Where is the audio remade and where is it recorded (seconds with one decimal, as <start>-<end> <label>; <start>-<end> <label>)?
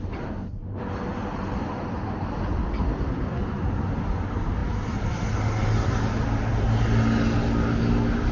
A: 0.0-8.3 recorded